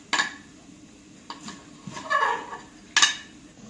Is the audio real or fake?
real